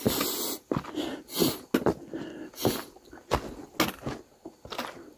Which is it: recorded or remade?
recorded